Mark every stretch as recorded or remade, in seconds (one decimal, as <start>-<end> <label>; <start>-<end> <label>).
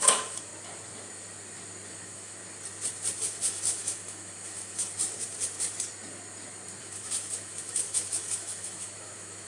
0.0-0.5 remade; 0.5-1.9 recorded; 1.9-2.4 remade; 2.4-3.2 recorded; 3.2-4.9 remade; 4.9-6.8 recorded; 6.8-9.5 remade